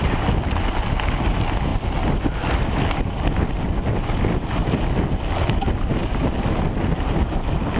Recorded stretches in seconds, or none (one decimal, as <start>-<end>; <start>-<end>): 0.0-7.8